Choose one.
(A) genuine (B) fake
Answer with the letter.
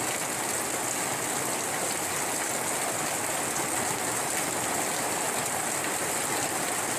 A